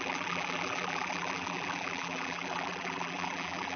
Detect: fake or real fake